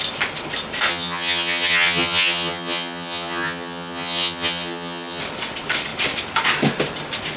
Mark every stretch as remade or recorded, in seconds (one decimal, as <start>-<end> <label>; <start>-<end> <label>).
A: 0.0-0.9 recorded; 0.9-5.2 remade; 5.2-7.4 recorded